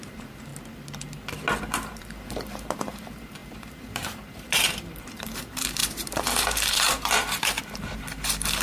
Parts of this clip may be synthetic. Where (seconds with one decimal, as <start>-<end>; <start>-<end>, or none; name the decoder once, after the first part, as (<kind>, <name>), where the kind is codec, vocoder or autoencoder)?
0.0-0.5 (vocoder, BigVGAN v2); 1.6-8.6